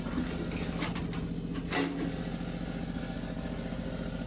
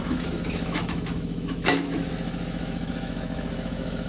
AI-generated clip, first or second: second